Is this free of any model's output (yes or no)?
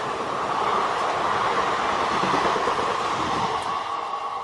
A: yes